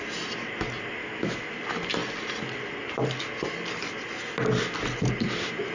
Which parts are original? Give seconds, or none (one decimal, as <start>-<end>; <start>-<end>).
0.0-1.0; 1.5-5.7